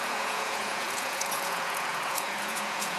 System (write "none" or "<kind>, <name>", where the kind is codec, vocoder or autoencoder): vocoder, Vocos